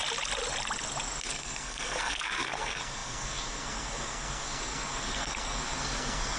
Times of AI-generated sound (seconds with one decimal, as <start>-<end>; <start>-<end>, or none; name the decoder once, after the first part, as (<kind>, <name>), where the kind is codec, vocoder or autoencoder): 1.2-6.4 (codec, SNAC)